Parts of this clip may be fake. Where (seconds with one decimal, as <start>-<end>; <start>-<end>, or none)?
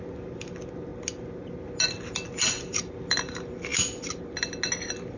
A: none